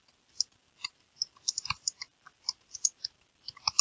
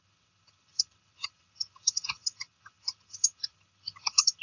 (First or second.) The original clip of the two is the first